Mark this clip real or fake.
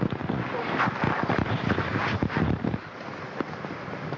real